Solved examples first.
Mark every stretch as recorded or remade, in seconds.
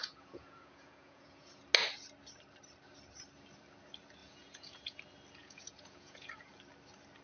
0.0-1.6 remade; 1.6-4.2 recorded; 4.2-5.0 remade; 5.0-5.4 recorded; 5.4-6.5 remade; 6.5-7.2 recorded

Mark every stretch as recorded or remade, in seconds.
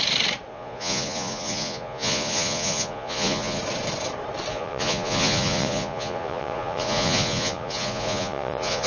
0.0-0.5 recorded; 0.5-3.6 remade; 3.6-4.5 recorded; 4.5-8.9 remade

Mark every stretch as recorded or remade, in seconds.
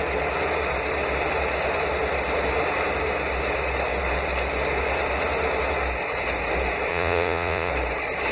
0.0-6.9 recorded; 6.9-7.7 remade; 7.7-8.3 recorded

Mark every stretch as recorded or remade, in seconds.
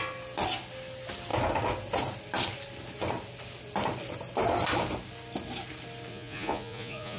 0.0-6.1 recorded; 6.1-7.2 remade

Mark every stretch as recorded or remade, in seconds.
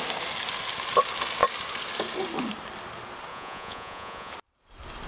0.0-3.3 recorded; 3.3-4.3 remade; 4.3-5.1 recorded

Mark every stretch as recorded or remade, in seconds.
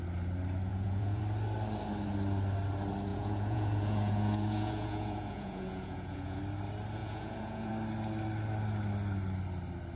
0.0-0.7 recorded; 0.7-1.2 remade; 1.2-3.1 recorded; 3.1-6.4 remade; 6.4-7.0 recorded; 7.0-7.7 remade; 7.7-10.0 recorded